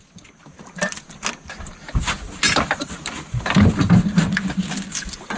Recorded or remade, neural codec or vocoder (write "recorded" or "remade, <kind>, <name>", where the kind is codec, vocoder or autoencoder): recorded